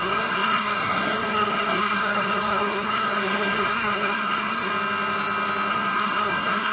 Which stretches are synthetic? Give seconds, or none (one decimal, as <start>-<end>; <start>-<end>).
0.0-4.7; 5.7-6.7